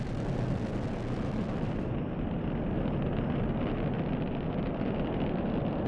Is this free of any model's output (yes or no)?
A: yes